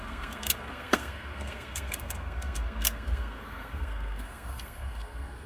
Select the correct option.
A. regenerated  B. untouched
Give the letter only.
A